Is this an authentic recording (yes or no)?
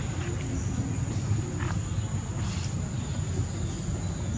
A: yes